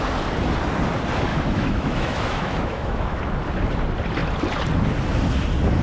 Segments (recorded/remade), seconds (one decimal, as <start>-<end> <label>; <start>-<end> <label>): 0.0-1.3 recorded; 1.3-3.2 remade; 3.2-5.8 recorded

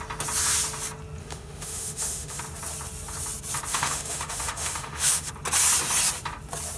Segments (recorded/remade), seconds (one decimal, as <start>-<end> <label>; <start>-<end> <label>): 0.0-1.2 recorded; 1.2-2.4 remade; 2.4-3.7 recorded; 3.7-5.3 remade; 5.3-6.8 recorded